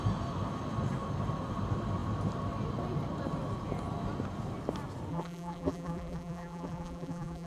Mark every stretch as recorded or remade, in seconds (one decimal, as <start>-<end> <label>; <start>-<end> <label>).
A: 0.0-5.1 recorded; 5.1-7.5 remade